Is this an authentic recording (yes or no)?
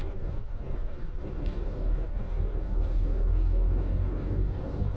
no